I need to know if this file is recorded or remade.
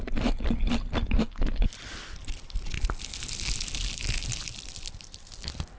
recorded